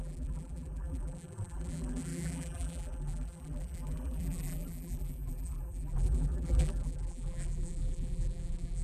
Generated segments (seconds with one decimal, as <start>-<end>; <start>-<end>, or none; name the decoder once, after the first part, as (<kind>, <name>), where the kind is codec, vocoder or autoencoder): 0.0-8.8 (vocoder, BigVGAN v2)